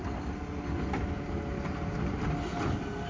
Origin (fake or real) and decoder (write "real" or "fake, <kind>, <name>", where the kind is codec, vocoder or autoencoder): real